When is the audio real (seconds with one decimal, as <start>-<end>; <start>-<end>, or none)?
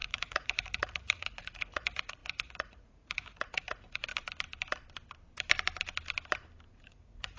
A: 4.1-6.7